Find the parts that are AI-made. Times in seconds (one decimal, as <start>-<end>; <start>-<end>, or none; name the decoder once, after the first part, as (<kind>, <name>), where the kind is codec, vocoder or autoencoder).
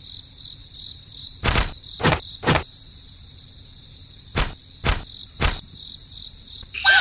0.6-4.4 (vocoder, BigVGAN v2); 5.2-6.6